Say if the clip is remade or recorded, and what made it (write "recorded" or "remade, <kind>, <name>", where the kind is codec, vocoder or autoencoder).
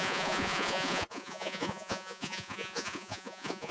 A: remade, vocoder, Vocos